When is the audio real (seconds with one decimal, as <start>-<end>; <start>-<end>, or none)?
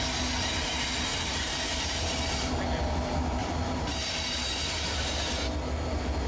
0.0-1.1; 2.0-3.4; 5.3-6.3